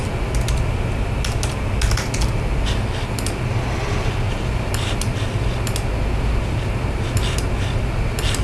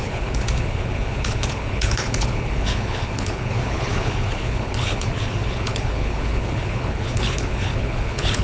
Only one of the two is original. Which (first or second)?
first